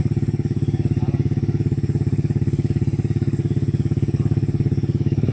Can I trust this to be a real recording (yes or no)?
no